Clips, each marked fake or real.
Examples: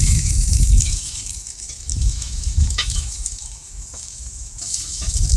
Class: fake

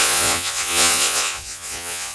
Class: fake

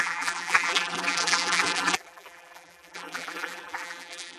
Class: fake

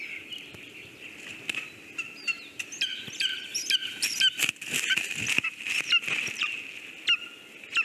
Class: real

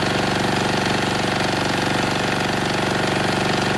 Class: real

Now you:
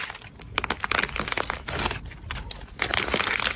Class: real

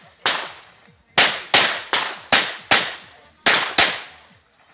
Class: real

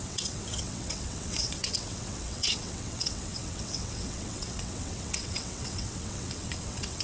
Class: fake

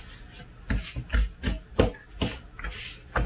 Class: real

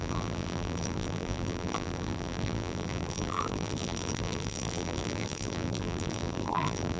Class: fake